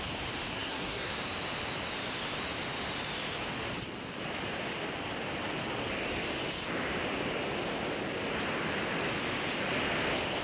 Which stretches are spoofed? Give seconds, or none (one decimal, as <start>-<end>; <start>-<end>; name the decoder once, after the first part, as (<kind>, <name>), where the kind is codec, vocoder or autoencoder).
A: 0.5-1.1 (codec, SNAC)